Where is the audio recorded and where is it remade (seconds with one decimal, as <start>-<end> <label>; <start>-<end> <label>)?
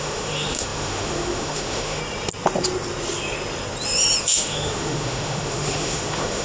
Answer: 0.0-2.0 remade; 2.0-4.2 recorded; 4.2-6.4 remade